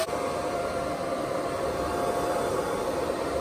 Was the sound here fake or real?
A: fake